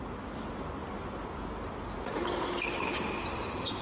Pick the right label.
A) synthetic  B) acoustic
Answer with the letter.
B